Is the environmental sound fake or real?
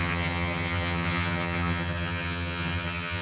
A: fake